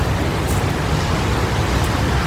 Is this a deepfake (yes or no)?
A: no